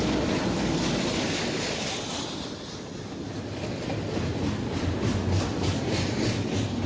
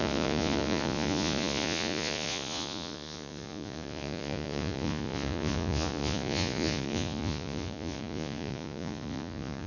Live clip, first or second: first